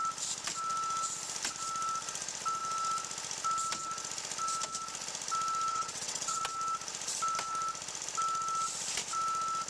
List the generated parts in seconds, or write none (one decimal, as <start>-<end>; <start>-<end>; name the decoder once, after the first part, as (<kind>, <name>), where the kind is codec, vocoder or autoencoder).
5.7-6.4 (vocoder, WaveNeXt)